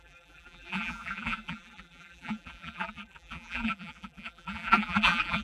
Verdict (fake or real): fake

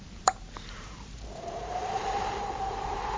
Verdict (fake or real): fake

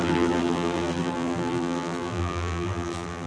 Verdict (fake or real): fake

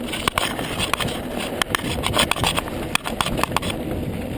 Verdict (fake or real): real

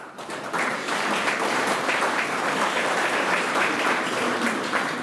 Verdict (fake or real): fake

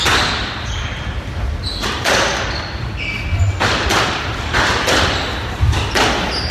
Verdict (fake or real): real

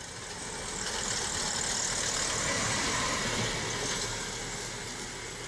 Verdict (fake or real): real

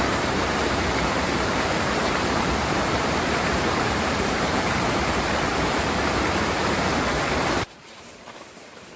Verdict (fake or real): fake